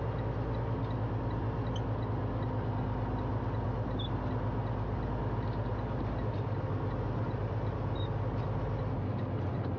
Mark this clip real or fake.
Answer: real